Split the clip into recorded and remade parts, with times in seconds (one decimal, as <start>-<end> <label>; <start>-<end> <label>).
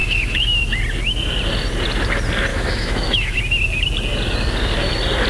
0.0-0.6 remade; 0.6-2.5 recorded; 2.5-3.4 remade; 3.4-5.3 recorded